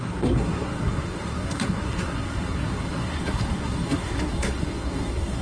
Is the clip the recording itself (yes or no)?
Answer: no